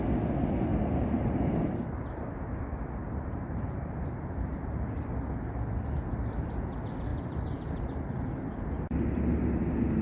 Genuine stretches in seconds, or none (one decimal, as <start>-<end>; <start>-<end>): 0.0-0.7; 2.6-3.0; 4.9-7.1; 7.8-10.0